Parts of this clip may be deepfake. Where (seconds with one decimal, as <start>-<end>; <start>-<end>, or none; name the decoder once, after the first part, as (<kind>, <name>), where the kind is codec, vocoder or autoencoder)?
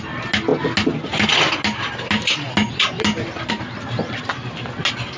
none